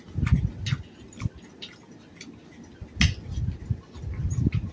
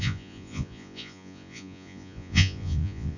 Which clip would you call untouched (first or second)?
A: first